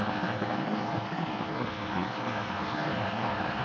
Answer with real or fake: fake